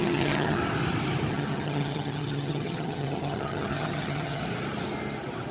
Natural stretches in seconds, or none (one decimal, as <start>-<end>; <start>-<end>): 0.6-1.3; 4.4-5.5